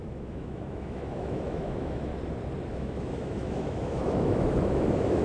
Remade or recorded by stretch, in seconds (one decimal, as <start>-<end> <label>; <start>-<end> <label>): 0.0-2.1 remade; 2.1-2.7 recorded; 2.7-5.2 remade